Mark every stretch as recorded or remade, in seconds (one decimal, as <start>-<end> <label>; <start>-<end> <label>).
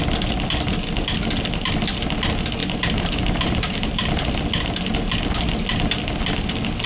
0.0-2.6 recorded; 2.6-4.1 remade; 4.1-6.9 recorded